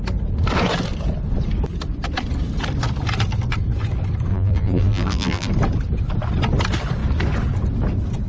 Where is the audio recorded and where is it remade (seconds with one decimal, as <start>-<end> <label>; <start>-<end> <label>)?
0.0-4.3 recorded; 4.3-5.5 remade; 5.5-8.3 recorded